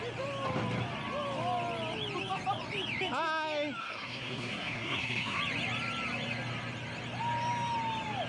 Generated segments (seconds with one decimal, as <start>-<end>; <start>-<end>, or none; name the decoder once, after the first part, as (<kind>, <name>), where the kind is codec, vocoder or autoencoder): 3.8-5.4 (codec, SNAC)